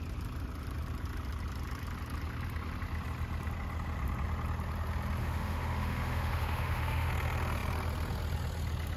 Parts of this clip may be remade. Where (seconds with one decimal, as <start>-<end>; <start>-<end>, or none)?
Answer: 5.2-7.1